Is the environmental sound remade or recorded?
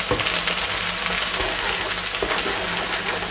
recorded